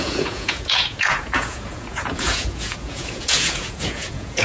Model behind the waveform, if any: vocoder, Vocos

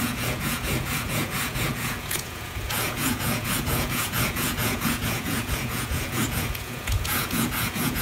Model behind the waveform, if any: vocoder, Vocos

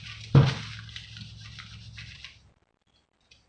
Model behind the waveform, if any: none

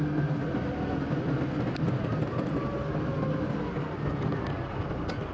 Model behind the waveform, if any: none